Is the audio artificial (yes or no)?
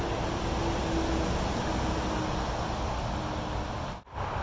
no